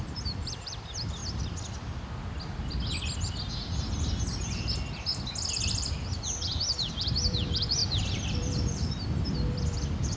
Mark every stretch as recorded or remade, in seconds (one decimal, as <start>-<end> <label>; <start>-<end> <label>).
0.0-1.2 remade; 1.2-5.5 recorded; 5.5-10.2 remade